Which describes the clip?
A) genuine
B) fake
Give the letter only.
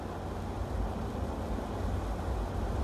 A